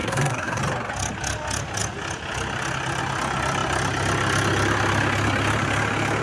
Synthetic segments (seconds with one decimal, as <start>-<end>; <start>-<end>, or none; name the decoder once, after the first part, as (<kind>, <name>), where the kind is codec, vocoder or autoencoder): 0.0-0.6 (codec, SNAC)